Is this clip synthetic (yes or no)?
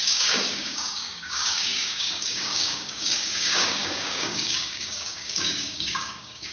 yes